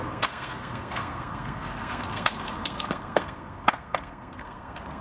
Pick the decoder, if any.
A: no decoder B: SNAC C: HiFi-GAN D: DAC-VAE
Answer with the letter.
B